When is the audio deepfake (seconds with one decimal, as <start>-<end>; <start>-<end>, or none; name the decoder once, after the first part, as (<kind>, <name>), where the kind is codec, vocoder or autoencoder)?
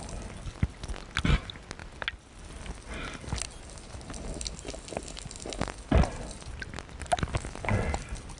none